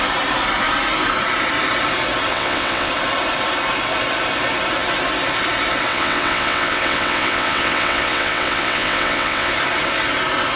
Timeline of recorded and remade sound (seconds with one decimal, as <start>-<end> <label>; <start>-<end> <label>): 0.0-2.3 recorded; 2.3-2.9 remade; 2.9-5.9 recorded; 5.9-9.5 remade; 9.5-10.6 recorded